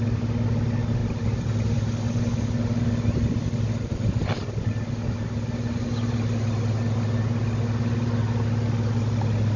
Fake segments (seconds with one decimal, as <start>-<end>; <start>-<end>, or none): none